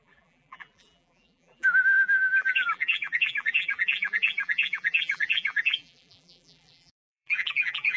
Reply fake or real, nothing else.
fake